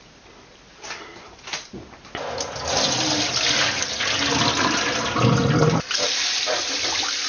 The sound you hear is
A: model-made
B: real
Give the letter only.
B